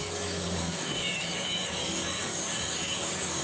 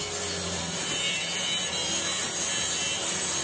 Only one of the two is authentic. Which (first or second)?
second